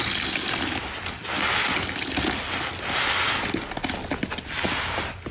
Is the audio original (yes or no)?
yes